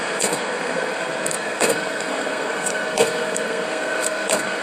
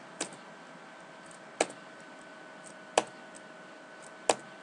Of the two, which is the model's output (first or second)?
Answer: first